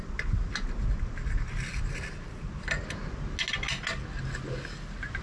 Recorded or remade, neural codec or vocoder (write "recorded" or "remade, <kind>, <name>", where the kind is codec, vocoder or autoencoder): recorded